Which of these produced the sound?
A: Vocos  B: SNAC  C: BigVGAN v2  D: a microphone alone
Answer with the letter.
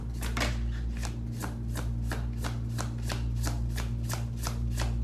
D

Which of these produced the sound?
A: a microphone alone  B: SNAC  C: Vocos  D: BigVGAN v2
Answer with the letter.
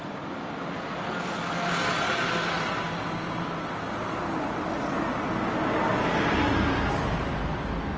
A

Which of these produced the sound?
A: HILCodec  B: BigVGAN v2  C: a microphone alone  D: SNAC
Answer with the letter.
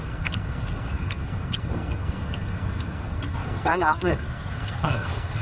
D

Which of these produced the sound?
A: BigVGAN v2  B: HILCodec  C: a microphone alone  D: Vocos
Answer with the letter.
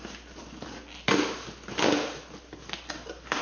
C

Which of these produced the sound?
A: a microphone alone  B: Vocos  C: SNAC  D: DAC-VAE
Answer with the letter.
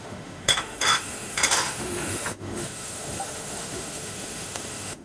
D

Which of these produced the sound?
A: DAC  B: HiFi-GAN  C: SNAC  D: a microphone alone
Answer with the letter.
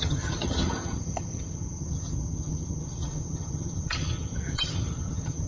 B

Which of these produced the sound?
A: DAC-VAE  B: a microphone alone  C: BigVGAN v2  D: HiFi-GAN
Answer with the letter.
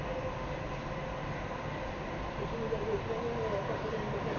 B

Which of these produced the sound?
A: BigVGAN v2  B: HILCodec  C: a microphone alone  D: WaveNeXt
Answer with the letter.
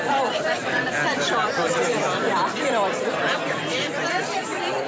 A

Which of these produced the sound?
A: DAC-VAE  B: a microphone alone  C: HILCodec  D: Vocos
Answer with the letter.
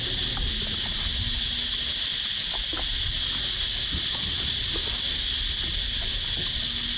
B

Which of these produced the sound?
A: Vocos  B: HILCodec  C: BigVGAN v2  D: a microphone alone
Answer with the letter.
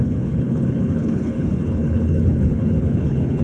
B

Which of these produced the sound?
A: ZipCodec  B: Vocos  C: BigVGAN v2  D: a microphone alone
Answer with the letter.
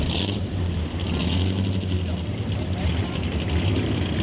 D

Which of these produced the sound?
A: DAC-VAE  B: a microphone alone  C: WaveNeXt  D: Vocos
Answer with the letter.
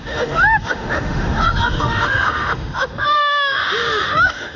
A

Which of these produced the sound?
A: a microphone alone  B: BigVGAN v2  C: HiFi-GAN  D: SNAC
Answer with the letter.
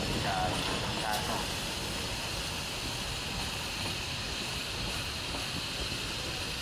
B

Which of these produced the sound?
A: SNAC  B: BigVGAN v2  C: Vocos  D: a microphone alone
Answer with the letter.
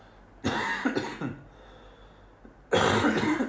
D